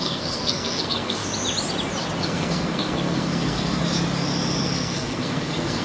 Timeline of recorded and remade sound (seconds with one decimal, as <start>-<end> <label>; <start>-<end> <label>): 0.0-1.2 remade; 1.2-2.2 recorded; 2.2-3.8 remade; 3.8-4.6 recorded; 4.6-5.8 remade